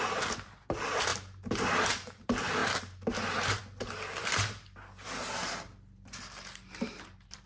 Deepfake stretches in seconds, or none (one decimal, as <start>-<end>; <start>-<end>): none